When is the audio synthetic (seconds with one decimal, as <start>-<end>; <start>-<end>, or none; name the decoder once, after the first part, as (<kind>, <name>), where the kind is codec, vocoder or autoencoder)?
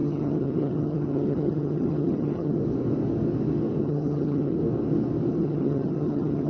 0.0-2.6 (vocoder, HiFi-GAN); 3.8-4.6; 5.3-6.5